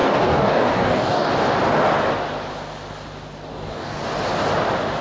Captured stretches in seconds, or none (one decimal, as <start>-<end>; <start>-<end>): 1.3-3.5; 4.0-5.0